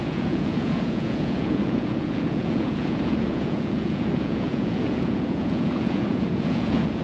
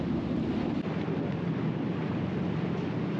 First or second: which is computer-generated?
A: first